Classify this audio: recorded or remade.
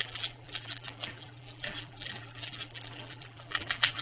remade